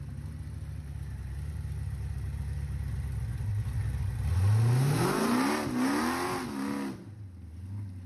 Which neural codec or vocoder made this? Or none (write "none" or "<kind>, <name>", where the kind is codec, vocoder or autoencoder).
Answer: none